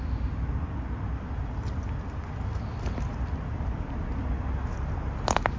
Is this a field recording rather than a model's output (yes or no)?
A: yes